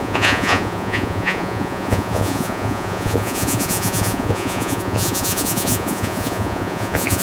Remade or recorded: remade